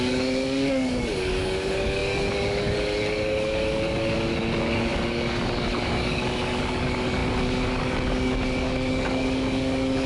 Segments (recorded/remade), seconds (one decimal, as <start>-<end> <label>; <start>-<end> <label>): 0.0-10.1 remade